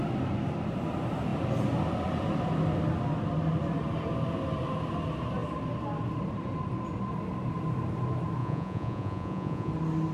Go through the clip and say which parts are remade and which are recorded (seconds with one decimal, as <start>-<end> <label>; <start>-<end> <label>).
0.0-8.4 recorded; 8.4-9.7 remade; 9.7-10.1 recorded